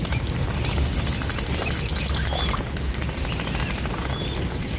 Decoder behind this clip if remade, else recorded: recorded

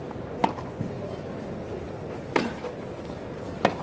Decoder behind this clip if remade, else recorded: recorded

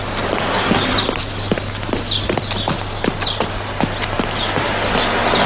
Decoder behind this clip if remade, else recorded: recorded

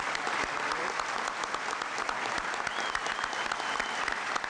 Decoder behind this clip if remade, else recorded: recorded